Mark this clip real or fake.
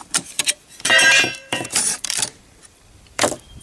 fake